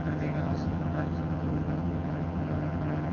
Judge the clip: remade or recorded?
remade